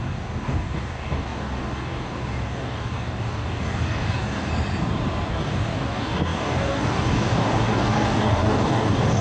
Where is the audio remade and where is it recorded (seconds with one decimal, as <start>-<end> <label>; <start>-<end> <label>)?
0.0-4.5 remade; 4.5-5.3 recorded; 5.3-9.2 remade